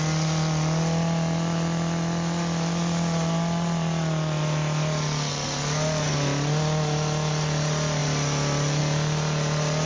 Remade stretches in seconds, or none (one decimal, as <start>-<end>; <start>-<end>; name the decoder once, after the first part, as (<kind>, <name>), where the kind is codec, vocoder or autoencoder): none